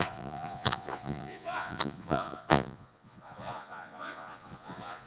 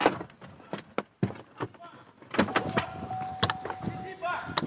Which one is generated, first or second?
first